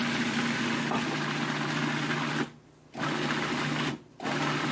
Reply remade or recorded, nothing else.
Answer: recorded